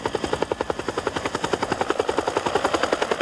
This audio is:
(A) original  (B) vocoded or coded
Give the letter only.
A